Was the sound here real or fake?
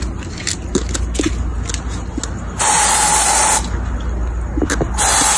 real